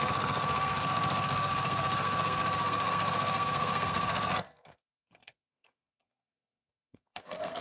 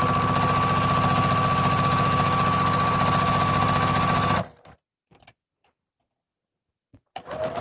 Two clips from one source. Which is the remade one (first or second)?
first